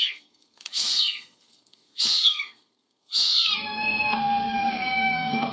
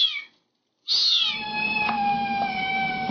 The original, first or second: second